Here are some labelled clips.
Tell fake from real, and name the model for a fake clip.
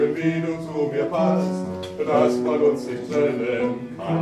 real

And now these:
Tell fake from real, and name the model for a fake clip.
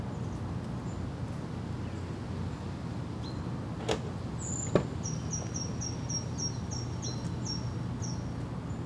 real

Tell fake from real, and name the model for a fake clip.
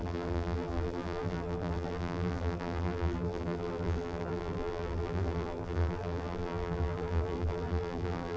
fake, vocoder, BigVGAN v2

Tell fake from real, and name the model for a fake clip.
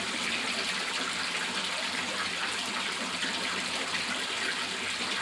real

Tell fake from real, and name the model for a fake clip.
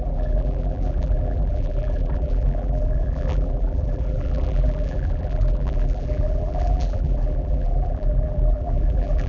fake, vocoder, BigVGAN v2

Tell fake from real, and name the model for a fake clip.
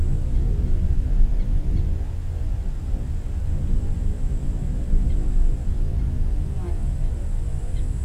fake, vocoder, BigVGAN v2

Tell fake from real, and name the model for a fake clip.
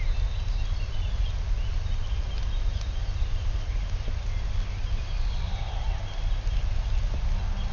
real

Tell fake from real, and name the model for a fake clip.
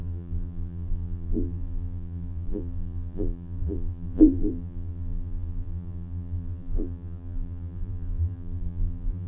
fake, vocoder, BigVGAN v2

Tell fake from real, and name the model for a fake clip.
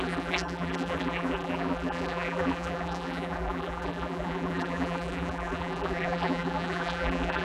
fake, vocoder, BigVGAN v2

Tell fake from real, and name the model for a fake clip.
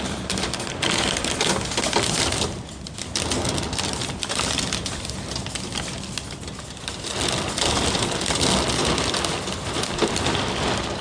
real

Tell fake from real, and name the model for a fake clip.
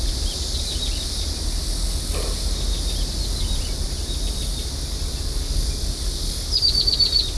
real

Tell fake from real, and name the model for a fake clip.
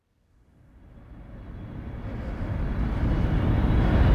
fake, vocoder, BigVGAN v2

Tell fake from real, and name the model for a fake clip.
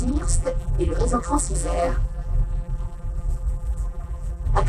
fake, vocoder, BigVGAN v2